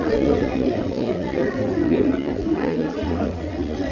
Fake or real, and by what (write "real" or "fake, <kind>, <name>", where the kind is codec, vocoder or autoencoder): fake, vocoder, WaveNeXt